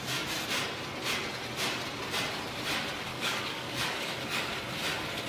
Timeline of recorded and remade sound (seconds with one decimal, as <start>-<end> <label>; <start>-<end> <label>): 0.0-3.1 recorded; 3.1-4.5 remade; 4.5-5.3 recorded

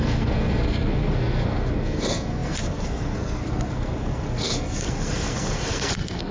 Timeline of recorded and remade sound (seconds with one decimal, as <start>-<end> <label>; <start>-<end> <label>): 0.0-6.3 remade

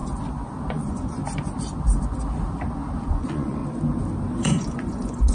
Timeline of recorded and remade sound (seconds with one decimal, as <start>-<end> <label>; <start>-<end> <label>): 0.0-0.7 recorded; 0.7-1.2 remade; 1.2-3.1 recorded; 3.1-3.6 remade; 3.6-4.3 recorded; 4.3-5.3 remade